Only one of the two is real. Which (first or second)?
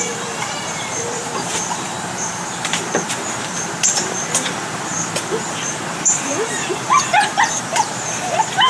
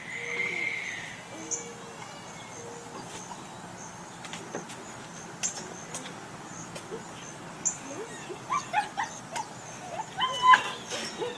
second